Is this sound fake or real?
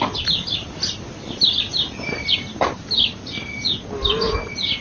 real